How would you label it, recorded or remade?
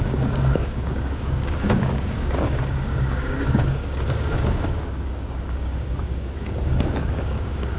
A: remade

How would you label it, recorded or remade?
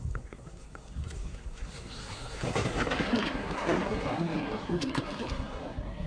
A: remade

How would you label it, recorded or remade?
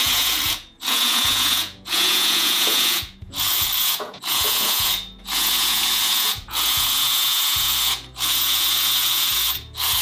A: remade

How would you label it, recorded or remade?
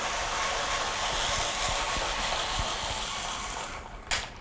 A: recorded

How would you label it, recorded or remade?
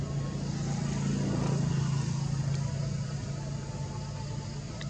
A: recorded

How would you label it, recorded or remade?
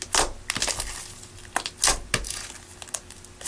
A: recorded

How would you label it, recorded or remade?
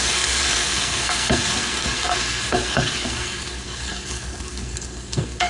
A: remade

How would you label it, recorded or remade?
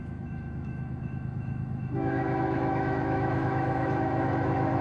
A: remade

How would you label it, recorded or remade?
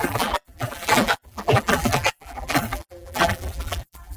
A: remade